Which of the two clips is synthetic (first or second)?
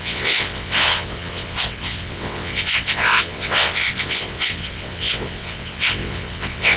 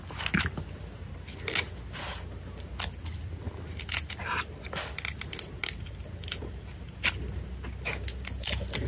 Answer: first